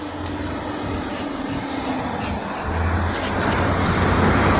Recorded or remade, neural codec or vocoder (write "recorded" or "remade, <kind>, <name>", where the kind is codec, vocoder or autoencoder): recorded